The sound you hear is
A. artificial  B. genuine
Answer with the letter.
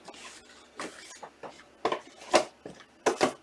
B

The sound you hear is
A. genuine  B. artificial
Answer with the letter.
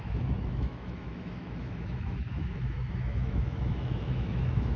B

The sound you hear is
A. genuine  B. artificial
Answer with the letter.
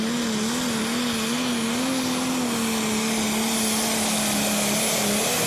A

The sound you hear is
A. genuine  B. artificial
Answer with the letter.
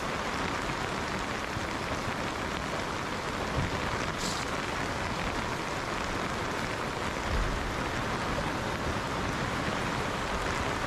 A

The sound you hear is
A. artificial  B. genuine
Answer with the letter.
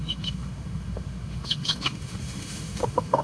A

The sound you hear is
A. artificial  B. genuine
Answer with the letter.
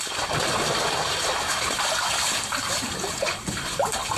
B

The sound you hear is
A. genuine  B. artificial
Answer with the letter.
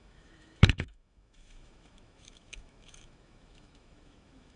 B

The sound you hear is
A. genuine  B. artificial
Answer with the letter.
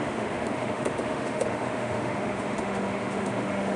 B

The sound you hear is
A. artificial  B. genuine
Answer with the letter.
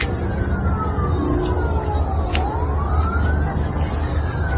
B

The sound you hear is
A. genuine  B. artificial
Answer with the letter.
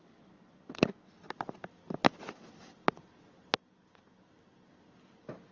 A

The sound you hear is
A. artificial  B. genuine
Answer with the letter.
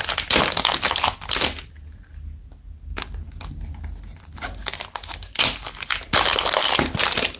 B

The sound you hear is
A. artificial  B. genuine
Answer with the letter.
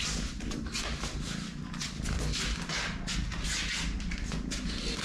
B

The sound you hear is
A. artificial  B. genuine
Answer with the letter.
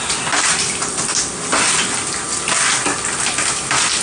B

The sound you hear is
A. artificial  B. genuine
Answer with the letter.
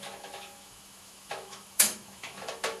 A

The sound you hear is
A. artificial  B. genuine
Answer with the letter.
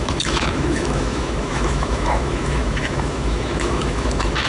A